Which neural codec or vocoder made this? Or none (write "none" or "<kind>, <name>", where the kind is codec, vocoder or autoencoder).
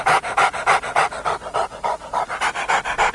none